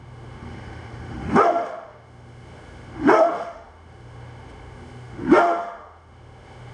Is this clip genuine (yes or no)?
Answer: no